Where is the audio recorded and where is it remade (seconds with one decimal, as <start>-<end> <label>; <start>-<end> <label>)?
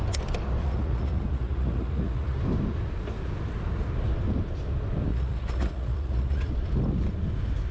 0.0-0.6 recorded; 0.6-2.4 remade; 2.4-5.1 recorded; 5.1-6.5 remade; 6.5-7.7 recorded